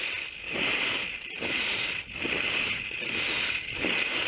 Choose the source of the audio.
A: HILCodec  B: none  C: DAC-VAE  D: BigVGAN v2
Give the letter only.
B